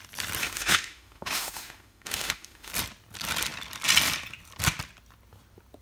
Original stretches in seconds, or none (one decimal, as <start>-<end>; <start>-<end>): 0.0-0.4; 2.7-5.8